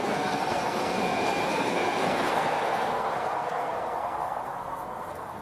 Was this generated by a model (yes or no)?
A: yes